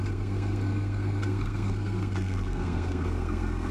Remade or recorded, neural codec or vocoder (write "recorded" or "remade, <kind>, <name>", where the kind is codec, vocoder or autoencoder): remade, codec, SNAC